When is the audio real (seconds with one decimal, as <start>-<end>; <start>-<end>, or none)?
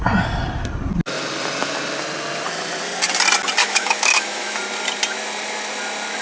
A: 0.0-3.6; 4.6-6.2